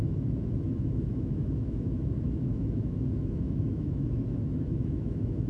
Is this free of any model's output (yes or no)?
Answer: no